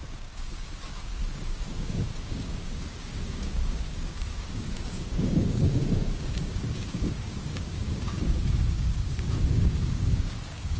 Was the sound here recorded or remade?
remade